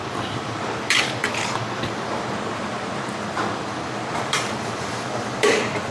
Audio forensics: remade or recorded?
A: remade